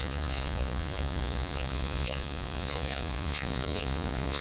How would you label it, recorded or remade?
remade